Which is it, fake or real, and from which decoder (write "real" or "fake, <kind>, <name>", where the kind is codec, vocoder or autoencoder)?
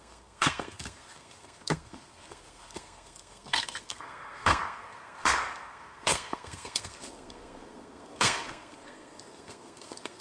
fake, codec, SNAC